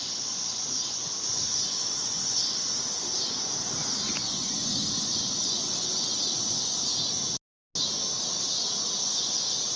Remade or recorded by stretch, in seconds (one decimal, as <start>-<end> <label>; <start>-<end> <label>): 0.0-6.9 remade; 6.9-9.0 recorded; 9.0-9.8 remade